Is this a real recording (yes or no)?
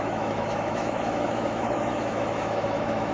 no